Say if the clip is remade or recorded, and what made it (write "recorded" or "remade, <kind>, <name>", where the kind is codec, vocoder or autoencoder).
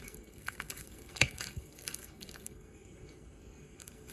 remade, codec, SNAC